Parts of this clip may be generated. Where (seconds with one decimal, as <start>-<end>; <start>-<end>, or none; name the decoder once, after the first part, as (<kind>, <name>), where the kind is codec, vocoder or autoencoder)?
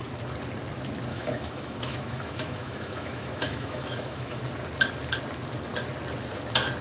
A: 1.1-4.4 (autoencoder, DAC-VAE)